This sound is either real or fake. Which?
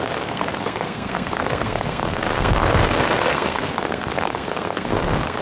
fake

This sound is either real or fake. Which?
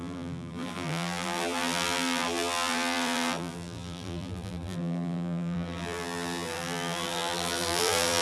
fake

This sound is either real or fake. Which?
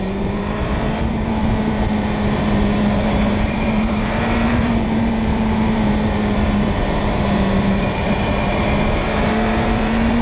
fake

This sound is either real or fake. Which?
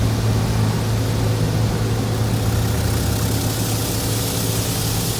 real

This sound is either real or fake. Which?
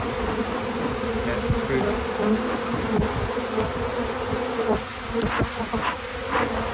real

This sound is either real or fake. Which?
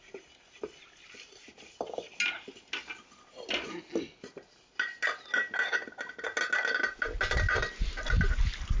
real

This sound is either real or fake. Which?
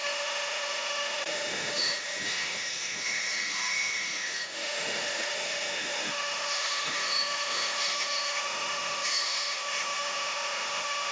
fake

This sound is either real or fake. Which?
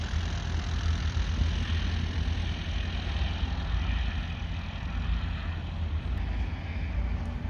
real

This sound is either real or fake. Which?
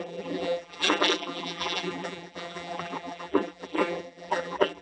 fake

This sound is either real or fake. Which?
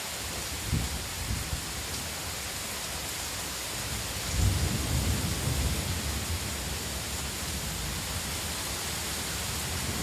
real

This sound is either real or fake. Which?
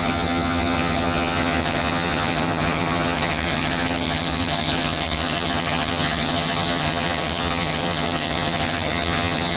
fake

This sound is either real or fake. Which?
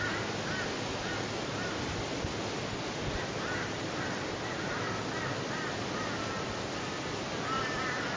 real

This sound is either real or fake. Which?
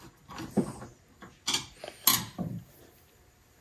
real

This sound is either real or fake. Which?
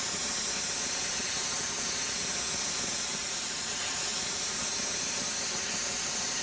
real